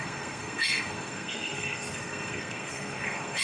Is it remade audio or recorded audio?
remade